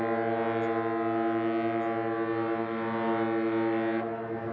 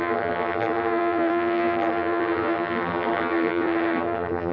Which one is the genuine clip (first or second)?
first